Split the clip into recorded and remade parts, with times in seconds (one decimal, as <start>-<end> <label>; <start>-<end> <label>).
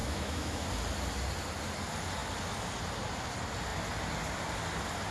0.0-0.7 remade; 0.7-5.1 recorded